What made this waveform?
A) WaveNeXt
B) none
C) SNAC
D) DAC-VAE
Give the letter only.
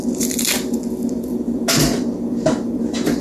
B